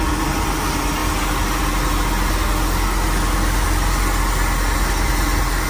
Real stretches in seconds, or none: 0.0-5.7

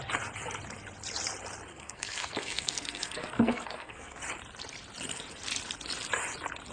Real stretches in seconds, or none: 0.0-1.7; 4.2-6.7

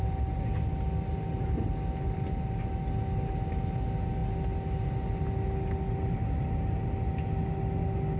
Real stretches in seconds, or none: 0.0-8.2